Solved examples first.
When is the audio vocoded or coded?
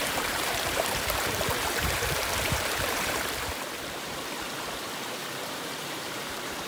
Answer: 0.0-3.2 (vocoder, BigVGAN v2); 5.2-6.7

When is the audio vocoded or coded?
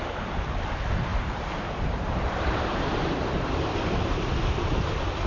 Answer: 1.1-4.3 (vocoder, BigVGAN v2)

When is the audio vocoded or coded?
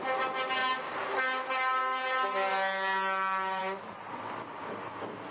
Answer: 0.6-1.2 (vocoder, BigVGAN v2)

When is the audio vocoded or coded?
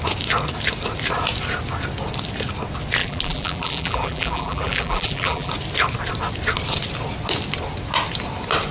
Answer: 3.0-5.5 (vocoder, BigVGAN v2)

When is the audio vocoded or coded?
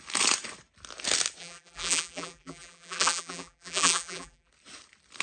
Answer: 1.4-4.5 (vocoder, BigVGAN v2)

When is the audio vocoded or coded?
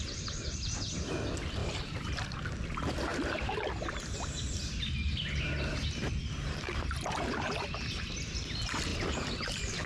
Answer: 1.6-2.2 (vocoder, BigVGAN v2); 3.1-3.7; 5.7-7.5; 8.9-9.4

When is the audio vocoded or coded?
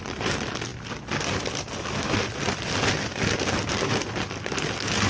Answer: none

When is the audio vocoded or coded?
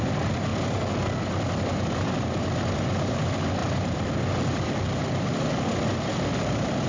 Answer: 0.0-0.5 (vocoder, BigVGAN v2); 2.2-6.9